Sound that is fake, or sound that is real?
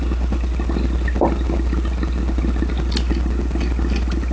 real